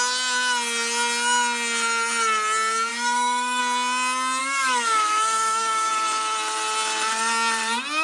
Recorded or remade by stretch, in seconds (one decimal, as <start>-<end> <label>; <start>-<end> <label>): 0.0-2.9 recorded; 2.9-3.6 remade; 3.6-4.4 recorded; 4.4-5.9 remade; 5.9-8.0 recorded